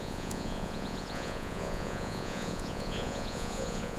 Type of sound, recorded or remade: remade